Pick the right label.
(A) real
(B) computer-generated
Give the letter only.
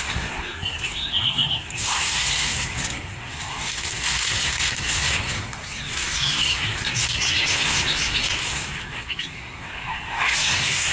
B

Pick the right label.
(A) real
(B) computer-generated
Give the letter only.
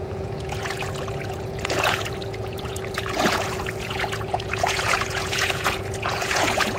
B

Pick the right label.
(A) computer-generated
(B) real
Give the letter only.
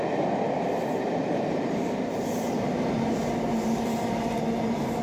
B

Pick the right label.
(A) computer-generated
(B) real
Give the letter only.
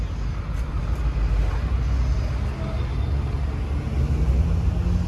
B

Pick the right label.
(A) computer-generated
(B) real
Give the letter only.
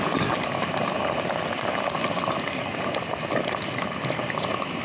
B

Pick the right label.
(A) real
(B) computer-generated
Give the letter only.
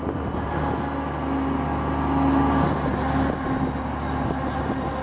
A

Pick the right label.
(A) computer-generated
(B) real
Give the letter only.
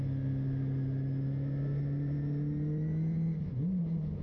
B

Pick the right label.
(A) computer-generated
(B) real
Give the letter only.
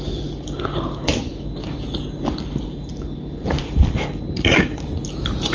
B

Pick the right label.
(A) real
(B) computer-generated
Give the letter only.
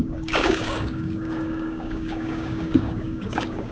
B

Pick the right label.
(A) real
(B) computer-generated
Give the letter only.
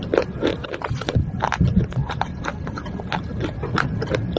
A